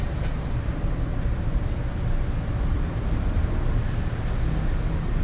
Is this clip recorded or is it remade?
recorded